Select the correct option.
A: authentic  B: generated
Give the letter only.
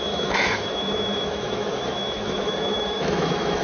B